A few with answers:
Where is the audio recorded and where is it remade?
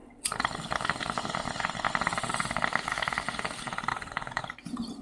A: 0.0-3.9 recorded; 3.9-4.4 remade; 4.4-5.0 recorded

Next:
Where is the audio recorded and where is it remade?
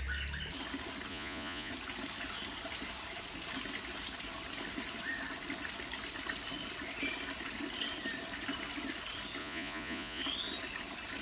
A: 0.0-1.1 recorded; 1.1-1.7 remade; 1.7-9.4 recorded; 9.4-10.2 remade; 10.2-11.2 recorded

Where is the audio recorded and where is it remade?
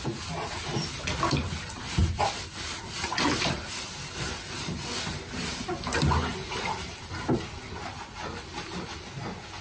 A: 0.0-9.6 recorded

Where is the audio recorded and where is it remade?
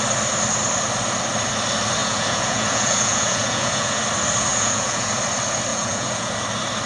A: 0.0-2.0 recorded; 2.0-4.0 remade; 4.0-4.5 recorded; 4.5-5.1 remade; 5.1-5.7 recorded; 5.7-6.3 remade; 6.3-6.9 recorded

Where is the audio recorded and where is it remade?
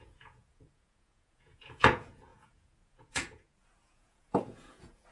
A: 0.0-5.1 remade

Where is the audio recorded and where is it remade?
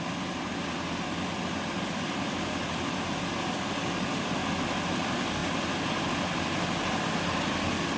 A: 0.0-8.0 recorded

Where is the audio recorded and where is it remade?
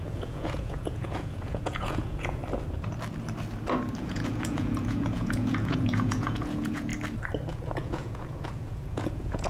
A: 0.0-2.4 remade; 2.4-4.0 recorded; 4.0-6.9 remade; 6.9-7.5 recorded; 7.5-9.5 remade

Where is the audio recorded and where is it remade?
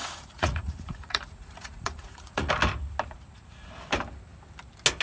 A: 0.0-2.5 remade; 2.5-5.0 recorded